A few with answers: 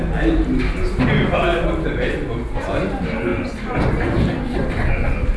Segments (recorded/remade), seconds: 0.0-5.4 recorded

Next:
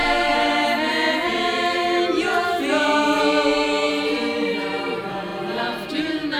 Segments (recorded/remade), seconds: 0.0-6.4 recorded

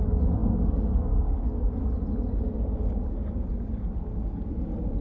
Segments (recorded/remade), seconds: 0.0-5.0 recorded